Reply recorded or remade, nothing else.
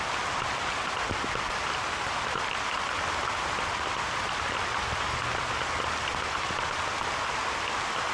recorded